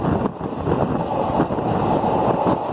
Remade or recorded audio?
recorded